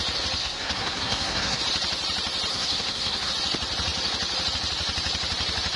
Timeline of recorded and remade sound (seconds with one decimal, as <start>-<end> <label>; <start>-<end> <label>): 0.0-0.4 recorded; 0.4-1.6 remade; 1.6-2.5 recorded; 2.5-3.3 remade; 3.3-5.8 recorded